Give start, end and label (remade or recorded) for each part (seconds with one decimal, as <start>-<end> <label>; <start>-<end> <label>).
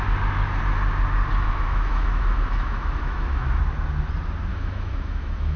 0.0-1.3 recorded; 1.3-3.6 remade; 3.6-4.5 recorded; 4.5-5.6 remade